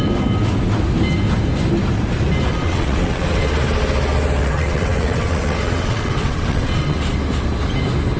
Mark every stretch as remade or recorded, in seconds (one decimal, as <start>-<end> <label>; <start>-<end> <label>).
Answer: 0.0-2.5 recorded; 2.5-3.5 remade; 3.5-4.4 recorded; 4.4-7.0 remade; 7.0-8.2 recorded